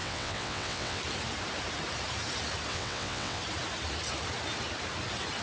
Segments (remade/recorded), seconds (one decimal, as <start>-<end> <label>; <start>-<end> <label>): 0.0-1.0 remade; 1.0-2.7 recorded; 2.7-3.4 remade; 3.4-5.4 recorded